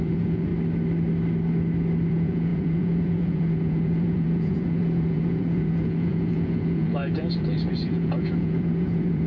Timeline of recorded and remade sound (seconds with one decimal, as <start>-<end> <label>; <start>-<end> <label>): 0.0-0.5 remade; 0.5-2.1 recorded; 2.1-9.3 remade